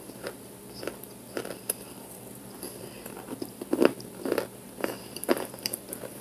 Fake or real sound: fake